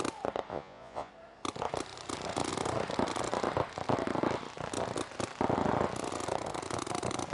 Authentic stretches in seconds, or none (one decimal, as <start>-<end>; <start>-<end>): 0.0-0.5; 1.1-7.3